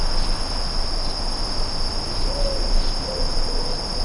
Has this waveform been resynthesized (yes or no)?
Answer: no